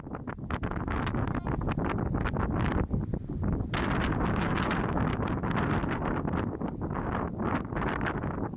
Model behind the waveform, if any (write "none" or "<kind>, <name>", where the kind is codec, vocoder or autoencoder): none